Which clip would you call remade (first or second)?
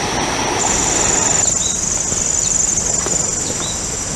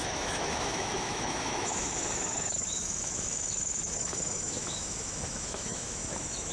second